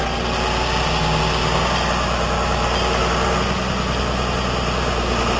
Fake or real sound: real